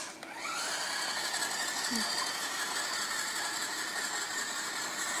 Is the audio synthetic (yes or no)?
no